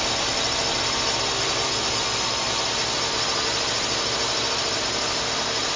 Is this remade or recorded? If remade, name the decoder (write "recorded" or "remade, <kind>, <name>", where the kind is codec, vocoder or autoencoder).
recorded